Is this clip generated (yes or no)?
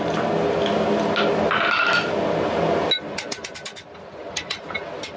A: no